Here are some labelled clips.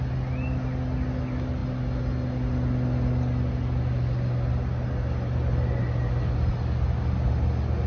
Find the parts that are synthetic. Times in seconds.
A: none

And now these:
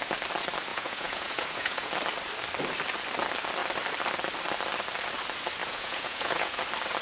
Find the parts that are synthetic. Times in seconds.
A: 0.7-1.9 (vocoder, Vocos); 5.6-6.6

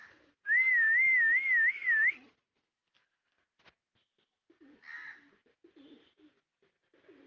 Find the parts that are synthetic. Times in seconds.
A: 0.0-0.7 (vocoder, BigVGAN v2)

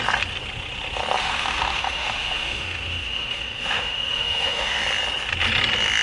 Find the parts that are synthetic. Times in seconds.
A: 1.2-4.8 (autoencoder, DAC-VAE)

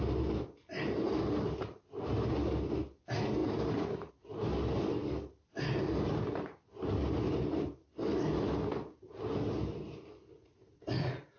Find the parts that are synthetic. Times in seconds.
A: 10.4-11.4 (vocoder, Vocos)

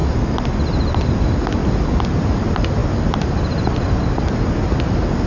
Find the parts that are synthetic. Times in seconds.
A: none